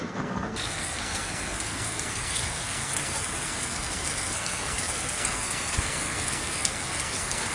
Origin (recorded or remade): remade